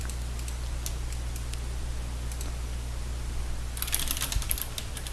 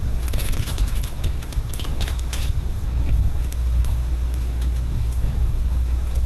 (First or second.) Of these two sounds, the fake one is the second